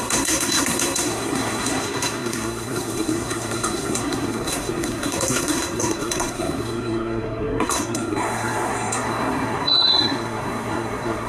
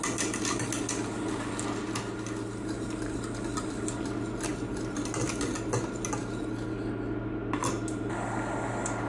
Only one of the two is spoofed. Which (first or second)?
first